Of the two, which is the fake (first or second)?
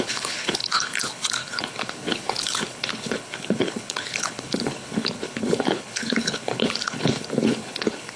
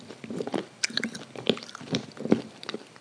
first